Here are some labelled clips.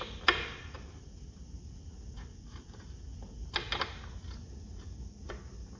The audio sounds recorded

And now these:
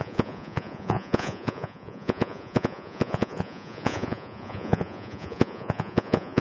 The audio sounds remade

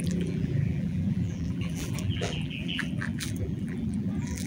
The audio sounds remade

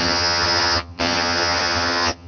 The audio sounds remade